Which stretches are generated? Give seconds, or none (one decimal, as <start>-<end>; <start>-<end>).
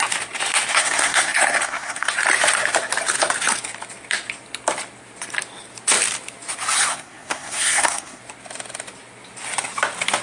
0.7-2.1; 6.9-8.2